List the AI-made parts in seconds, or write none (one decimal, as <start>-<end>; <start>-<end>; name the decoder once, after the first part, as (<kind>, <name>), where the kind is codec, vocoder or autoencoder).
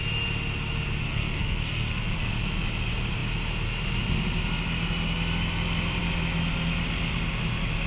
1.1-2.3 (codec, SNAC)